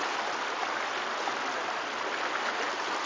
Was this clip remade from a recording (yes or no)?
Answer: no